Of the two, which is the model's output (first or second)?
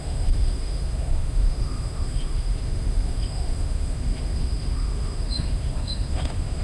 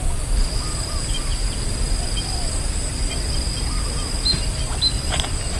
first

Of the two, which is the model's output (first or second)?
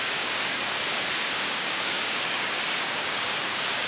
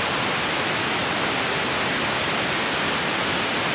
first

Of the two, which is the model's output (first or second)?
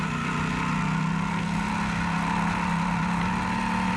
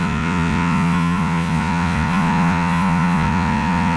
second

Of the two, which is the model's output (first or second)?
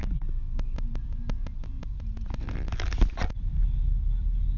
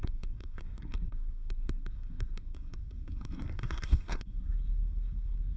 second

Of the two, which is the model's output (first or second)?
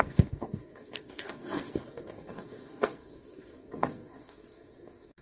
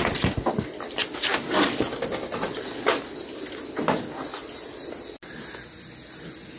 first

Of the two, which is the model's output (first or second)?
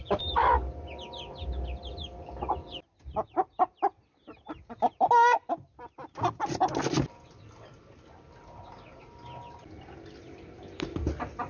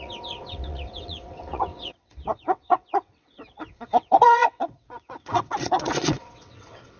second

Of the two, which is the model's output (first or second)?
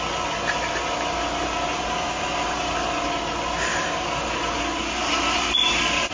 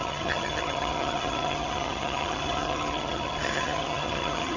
second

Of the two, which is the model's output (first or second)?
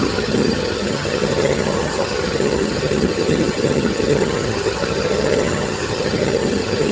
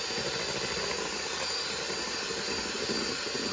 first